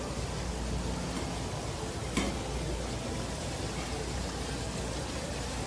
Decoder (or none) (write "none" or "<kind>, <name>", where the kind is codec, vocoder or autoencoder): none